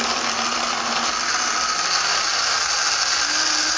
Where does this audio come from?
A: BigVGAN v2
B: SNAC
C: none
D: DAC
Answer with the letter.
C